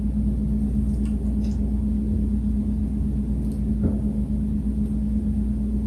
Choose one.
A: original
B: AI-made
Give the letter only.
A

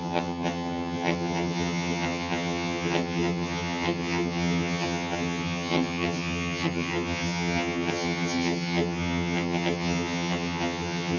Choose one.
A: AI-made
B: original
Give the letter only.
A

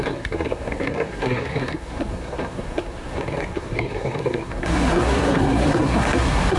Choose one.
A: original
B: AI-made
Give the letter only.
B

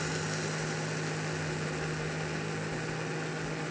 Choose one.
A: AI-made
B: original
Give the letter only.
B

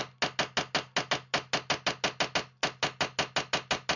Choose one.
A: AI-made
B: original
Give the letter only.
B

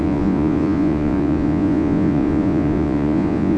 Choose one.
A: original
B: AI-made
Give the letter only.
B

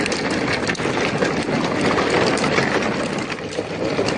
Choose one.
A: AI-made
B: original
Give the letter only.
B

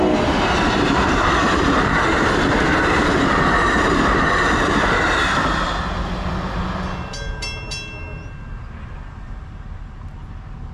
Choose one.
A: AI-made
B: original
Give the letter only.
B